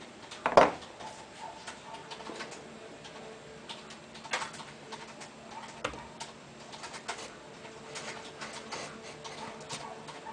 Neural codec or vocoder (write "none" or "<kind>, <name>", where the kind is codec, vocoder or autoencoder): none